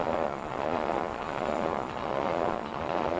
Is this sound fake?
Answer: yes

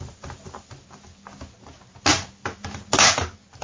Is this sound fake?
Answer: no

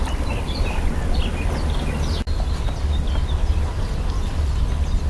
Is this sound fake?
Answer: no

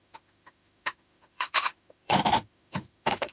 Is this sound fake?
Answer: yes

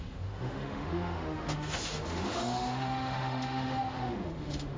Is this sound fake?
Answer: yes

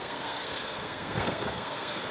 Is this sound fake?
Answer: yes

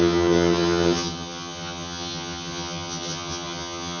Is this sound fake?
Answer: yes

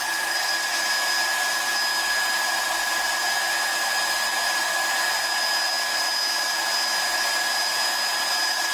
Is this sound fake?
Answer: no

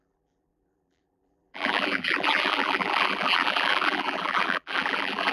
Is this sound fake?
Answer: yes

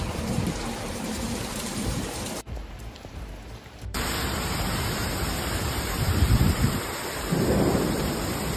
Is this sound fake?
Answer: yes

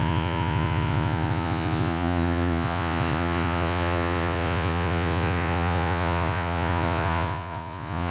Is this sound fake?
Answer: yes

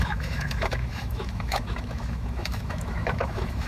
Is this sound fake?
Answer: yes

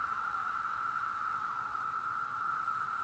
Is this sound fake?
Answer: yes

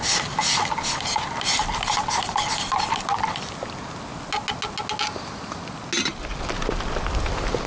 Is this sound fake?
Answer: no